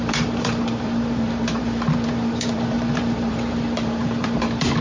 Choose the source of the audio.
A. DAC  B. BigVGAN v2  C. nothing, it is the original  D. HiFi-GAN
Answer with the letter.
B